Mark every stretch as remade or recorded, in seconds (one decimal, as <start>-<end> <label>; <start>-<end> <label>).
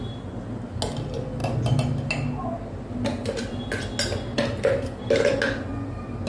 0.0-3.2 recorded; 3.2-3.7 remade; 3.7-4.3 recorded; 4.3-5.0 remade; 5.0-6.3 recorded